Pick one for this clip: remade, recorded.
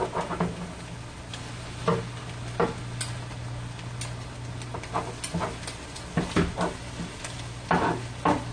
recorded